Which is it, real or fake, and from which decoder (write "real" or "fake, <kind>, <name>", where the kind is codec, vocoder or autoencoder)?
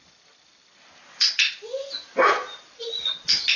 real